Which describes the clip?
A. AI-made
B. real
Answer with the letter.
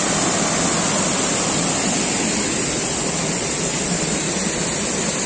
B